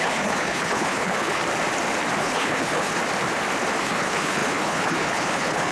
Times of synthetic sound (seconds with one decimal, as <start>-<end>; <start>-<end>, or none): 0.0-1.4; 2.2-3.0; 3.8-5.7